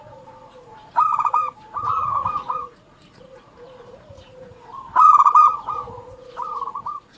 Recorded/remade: remade